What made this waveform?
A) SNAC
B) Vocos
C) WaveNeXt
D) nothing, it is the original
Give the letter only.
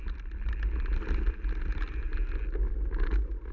D